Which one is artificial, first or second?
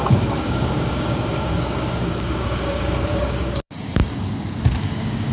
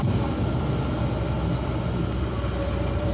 first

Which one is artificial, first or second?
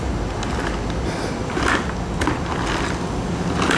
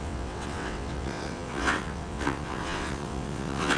second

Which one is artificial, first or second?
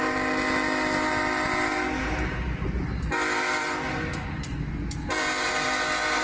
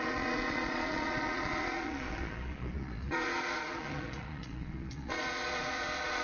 second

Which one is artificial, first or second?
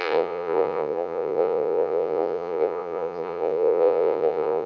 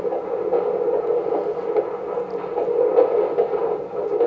first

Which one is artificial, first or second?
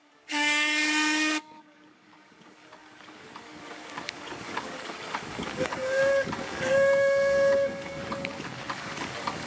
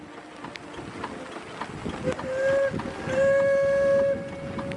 first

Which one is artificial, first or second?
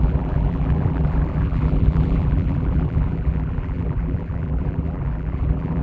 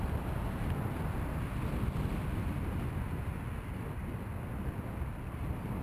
first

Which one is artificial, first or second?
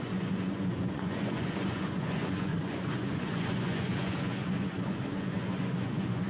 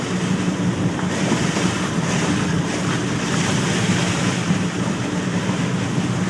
first